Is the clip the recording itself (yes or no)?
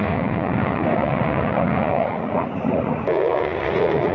no